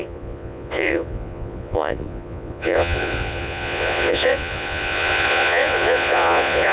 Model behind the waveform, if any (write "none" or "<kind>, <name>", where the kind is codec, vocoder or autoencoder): vocoder, Vocos